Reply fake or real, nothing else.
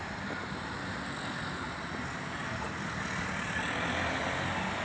real